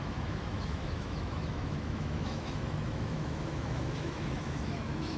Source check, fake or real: fake